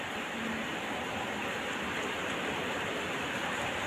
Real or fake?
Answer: real